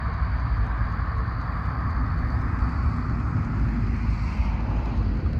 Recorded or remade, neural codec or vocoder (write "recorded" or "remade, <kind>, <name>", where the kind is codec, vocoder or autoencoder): recorded